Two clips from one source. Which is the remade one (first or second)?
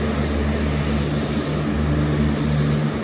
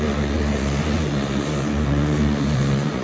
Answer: second